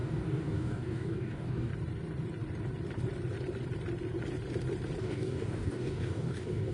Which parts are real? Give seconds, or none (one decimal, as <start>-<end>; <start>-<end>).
1.7-5.0